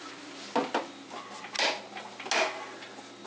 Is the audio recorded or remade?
recorded